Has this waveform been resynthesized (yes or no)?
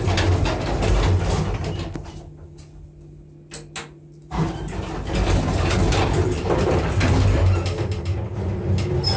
no